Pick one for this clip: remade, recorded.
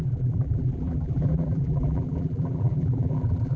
remade